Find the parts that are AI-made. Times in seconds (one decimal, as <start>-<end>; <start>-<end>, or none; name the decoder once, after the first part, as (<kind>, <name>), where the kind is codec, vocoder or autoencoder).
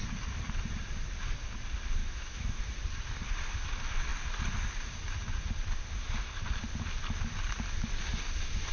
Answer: 2.0-2.6 (autoencoder, DAC-VAE)